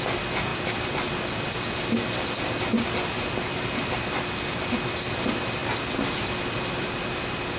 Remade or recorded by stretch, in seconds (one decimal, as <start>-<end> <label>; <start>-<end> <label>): 0.0-7.6 recorded